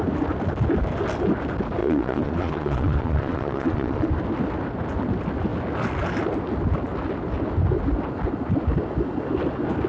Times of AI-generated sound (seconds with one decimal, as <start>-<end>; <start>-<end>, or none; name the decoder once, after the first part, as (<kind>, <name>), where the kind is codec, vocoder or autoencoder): 1.8-4.1 (vocoder, Vocos)